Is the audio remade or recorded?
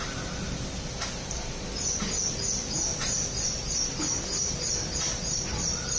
recorded